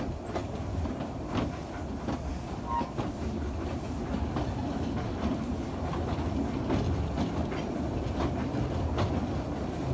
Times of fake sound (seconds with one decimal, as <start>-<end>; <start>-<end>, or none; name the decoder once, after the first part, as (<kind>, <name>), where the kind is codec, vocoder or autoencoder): none